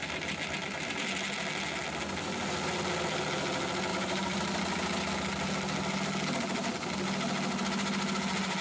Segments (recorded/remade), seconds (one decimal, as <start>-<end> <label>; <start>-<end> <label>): 0.0-3.9 recorded; 3.9-4.6 remade; 4.6-8.6 recorded